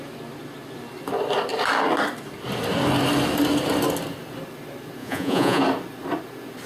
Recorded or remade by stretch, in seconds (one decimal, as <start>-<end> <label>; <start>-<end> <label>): 0.0-5.0 recorded; 5.0-5.6 remade; 5.6-6.7 recorded